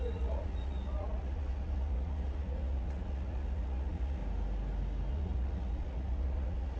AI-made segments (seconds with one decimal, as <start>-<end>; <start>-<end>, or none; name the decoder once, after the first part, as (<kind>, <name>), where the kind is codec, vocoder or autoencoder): 0.0-4.2 (vocoder, Vocos); 5.1-6.8